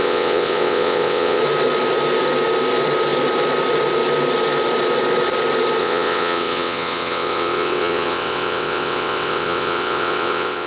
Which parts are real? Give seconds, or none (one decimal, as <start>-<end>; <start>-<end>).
1.4-5.8